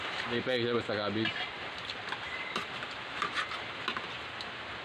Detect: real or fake real